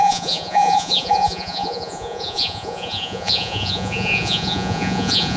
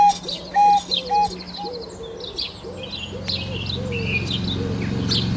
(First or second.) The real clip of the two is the second